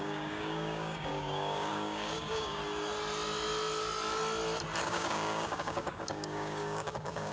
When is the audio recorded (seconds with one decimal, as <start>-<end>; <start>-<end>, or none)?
2.6-4.8